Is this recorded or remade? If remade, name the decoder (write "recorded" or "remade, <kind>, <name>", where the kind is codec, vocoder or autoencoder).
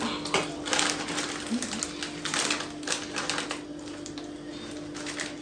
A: recorded